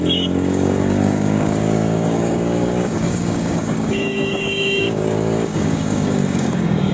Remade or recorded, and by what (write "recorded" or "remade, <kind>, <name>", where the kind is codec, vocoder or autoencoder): remade, codec, DAC